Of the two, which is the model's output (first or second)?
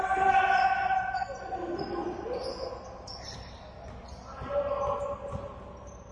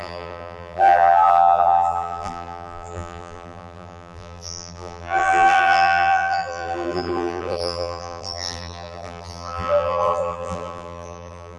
second